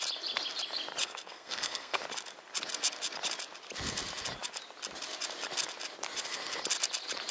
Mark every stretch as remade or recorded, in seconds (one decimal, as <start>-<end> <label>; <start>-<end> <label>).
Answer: 0.0-1.0 recorded; 1.0-2.0 remade; 2.0-7.3 recorded